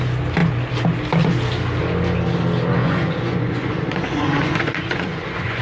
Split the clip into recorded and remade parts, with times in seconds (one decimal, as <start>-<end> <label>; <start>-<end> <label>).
0.0-2.8 recorded; 2.8-5.6 remade